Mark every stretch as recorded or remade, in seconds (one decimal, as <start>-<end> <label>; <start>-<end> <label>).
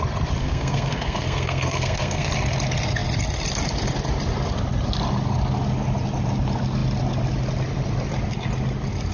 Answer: 0.0-0.4 recorded; 0.4-2.3 remade; 2.3-9.1 recorded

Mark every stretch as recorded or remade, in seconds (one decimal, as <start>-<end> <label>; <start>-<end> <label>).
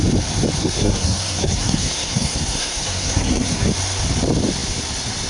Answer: 0.0-0.6 recorded; 0.6-3.7 remade; 3.7-5.3 recorded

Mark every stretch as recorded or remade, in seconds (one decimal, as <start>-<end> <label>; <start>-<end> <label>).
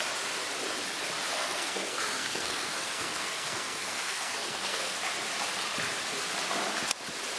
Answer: 0.0-1.3 recorded; 1.3-5.0 remade; 5.0-7.4 recorded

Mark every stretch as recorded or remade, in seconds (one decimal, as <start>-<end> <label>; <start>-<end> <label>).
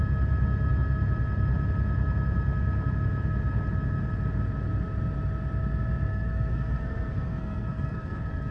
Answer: 0.0-6.1 recorded; 6.1-8.5 remade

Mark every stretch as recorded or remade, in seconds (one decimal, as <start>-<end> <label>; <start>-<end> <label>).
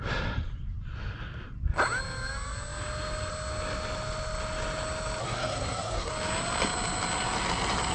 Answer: 0.0-5.2 recorded; 5.2-6.1 remade; 6.1-7.9 recorded